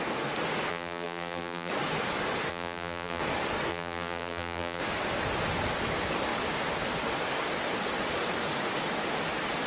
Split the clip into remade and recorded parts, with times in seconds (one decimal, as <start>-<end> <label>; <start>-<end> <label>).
0.0-0.7 recorded; 0.7-1.7 remade; 1.7-2.5 recorded; 2.5-3.2 remade; 3.2-3.7 recorded; 3.7-4.8 remade; 4.8-9.7 recorded